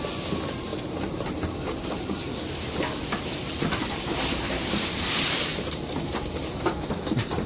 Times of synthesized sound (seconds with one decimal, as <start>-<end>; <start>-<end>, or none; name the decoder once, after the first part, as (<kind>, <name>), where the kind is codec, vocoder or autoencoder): none